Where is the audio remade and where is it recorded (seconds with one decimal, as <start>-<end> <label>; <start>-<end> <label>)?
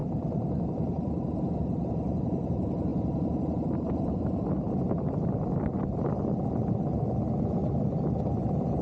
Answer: 0.0-0.6 remade; 0.6-2.9 recorded; 2.9-7.1 remade; 7.1-7.6 recorded; 7.6-8.2 remade; 8.2-8.8 recorded